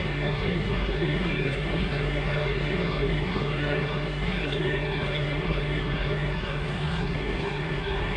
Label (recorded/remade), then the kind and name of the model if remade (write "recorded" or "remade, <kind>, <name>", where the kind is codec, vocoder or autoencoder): remade, codec, SNAC